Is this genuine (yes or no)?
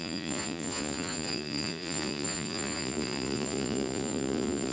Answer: no